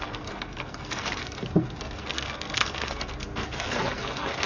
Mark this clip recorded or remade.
remade